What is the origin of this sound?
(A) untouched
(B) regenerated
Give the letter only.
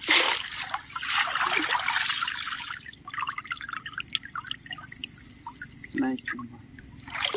A